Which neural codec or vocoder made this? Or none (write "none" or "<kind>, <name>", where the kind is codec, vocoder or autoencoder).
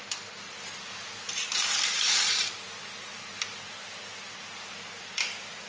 none